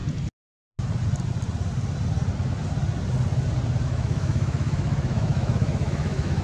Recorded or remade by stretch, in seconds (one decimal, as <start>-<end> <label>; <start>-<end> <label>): 0.0-3.8 recorded; 3.8-6.4 remade